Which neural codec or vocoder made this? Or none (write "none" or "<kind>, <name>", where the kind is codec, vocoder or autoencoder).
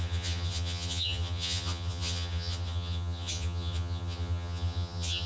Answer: vocoder, HiFi-GAN